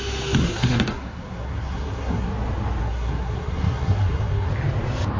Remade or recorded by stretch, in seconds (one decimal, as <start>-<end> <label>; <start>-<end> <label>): 0.0-0.4 recorded; 0.4-2.3 remade; 2.3-2.8 recorded; 2.8-4.5 remade; 4.5-5.2 recorded